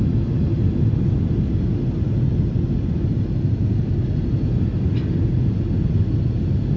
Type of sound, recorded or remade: recorded